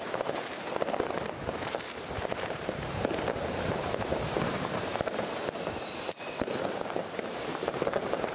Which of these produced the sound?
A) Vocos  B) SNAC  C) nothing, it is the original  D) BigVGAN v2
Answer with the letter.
D